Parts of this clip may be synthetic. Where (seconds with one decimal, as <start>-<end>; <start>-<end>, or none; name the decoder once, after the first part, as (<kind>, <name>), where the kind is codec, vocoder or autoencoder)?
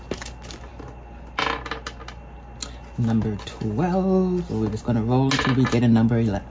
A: none